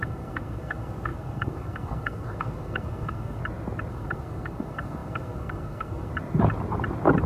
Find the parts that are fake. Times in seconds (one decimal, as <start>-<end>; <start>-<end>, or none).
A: 0.0-3.4; 3.9-6.1